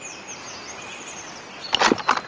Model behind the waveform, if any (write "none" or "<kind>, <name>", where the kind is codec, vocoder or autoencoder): none